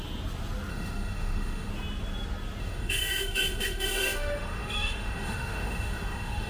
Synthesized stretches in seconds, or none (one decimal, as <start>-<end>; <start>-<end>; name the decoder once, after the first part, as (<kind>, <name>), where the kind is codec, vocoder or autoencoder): 0.7-1.7 (autoencoder, DAC-VAE); 2.6-6.5